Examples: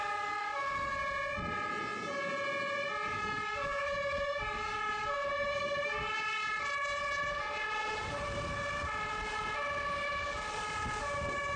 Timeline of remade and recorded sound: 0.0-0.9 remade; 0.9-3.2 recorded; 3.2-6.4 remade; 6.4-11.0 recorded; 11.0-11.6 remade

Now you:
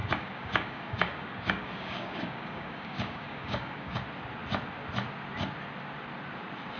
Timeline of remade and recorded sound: 0.0-4.0 remade; 4.0-6.8 recorded